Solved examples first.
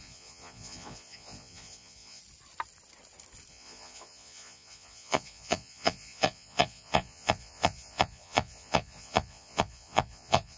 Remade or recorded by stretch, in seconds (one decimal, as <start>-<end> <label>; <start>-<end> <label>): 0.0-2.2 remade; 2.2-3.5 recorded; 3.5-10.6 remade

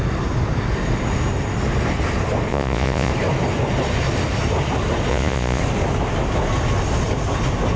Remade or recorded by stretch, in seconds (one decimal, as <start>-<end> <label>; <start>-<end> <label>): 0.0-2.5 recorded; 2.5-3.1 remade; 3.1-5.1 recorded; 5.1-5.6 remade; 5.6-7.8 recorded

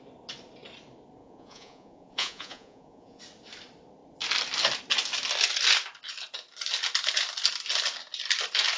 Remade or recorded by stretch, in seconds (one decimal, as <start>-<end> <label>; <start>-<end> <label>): 0.0-1.2 recorded; 1.2-3.2 remade; 3.2-8.8 recorded

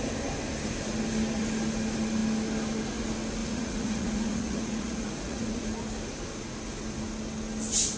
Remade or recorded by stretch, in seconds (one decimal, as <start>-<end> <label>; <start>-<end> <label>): 0.0-3.4 recorded; 3.4-5.6 remade; 5.6-8.0 recorded

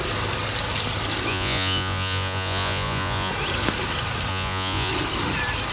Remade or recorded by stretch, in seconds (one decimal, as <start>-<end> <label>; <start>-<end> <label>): 0.0-1.3 recorded; 1.3-3.3 remade; 3.3-4.3 recorded; 4.3-4.9 remade; 4.9-5.7 recorded

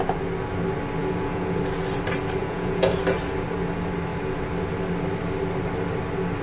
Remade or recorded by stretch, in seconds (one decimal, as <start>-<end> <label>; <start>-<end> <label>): 0.0-1.0 recorded; 1.0-1.6 remade; 1.6-2.4 recorded; 2.4-3.0 remade; 3.0-6.4 recorded